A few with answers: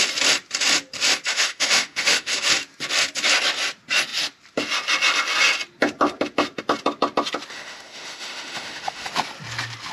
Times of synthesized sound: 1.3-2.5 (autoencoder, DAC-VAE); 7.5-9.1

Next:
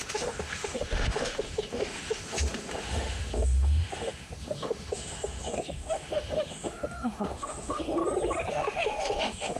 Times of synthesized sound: 0.0-8.0 (autoencoder, DAC-VAE); 8.5-9.6

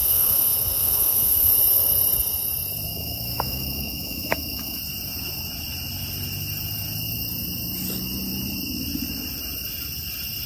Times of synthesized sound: 0.0-1.5 (autoencoder, DAC-VAE); 2.9-4.8

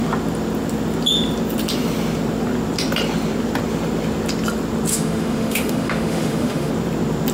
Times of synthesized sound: 4.9-6.7 (autoencoder, DAC-VAE)

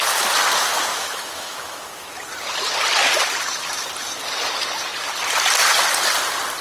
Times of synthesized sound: 0.9-2.2 (autoencoder, DAC-VAE)